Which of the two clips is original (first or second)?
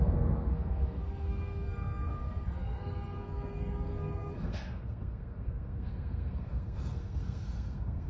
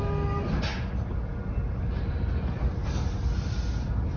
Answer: second